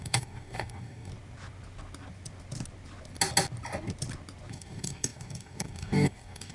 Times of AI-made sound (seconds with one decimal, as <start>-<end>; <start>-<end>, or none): 0.0-1.1; 4.5-6.5